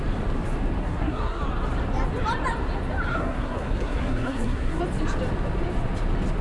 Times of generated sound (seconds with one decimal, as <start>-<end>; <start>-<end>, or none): 0.8-1.4; 3.1-4.8